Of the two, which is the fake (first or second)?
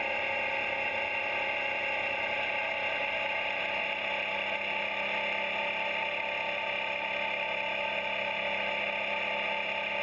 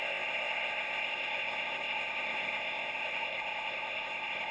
second